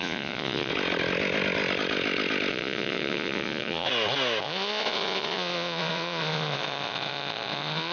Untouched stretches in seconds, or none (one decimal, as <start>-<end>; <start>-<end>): 0.7-2.5; 3.9-4.4